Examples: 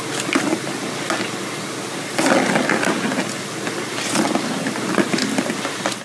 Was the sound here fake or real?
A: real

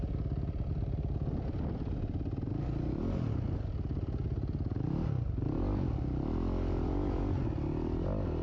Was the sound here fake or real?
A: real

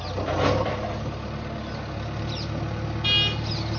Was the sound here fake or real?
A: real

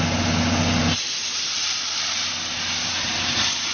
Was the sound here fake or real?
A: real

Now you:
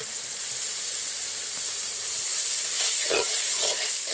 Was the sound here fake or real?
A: real